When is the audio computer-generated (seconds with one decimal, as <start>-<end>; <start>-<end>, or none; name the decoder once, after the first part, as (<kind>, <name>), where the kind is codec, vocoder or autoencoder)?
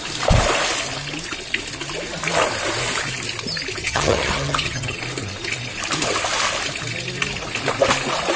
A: 3.8-5.0 (vocoder, HiFi-GAN)